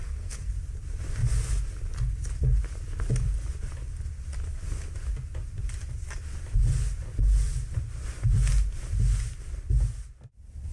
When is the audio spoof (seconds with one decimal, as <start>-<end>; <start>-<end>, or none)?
0.0-0.5